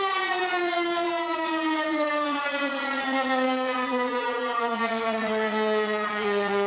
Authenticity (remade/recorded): remade